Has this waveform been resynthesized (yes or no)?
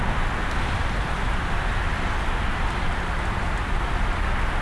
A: no